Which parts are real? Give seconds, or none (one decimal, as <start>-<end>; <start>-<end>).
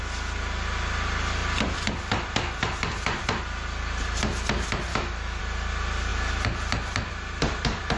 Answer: 0.0-4.9; 5.4-8.0